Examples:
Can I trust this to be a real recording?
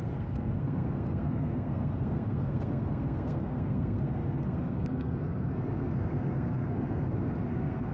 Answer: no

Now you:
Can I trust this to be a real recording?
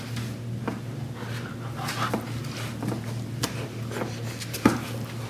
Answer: yes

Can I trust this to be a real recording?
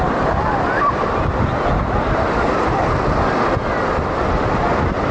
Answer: yes